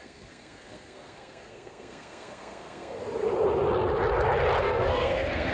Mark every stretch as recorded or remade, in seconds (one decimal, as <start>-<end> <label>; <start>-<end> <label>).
0.0-3.0 remade; 3.0-4.6 recorded; 4.6-5.5 remade